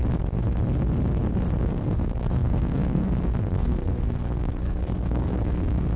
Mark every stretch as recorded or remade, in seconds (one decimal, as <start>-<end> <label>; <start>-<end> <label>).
0.0-1.6 recorded; 1.6-6.0 remade